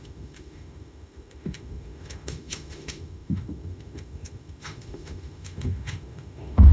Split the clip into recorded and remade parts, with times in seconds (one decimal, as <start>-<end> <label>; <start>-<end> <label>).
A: 0.0-6.7 remade

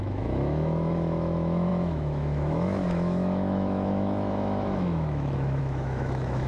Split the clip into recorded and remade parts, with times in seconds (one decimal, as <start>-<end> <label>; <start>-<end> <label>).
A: 0.0-6.5 remade

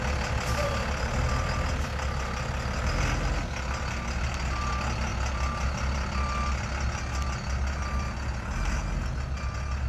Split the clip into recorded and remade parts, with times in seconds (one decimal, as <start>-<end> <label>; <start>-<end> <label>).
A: 0.0-9.9 recorded

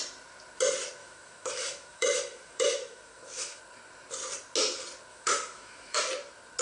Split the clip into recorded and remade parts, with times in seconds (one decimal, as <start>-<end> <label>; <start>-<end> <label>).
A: 0.0-1.0 recorded; 1.0-3.6 remade; 3.6-5.1 recorded; 5.1-6.0 remade; 6.0-6.6 recorded